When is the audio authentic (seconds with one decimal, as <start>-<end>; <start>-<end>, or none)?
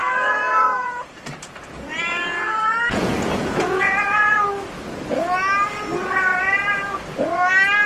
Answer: 4.5-7.9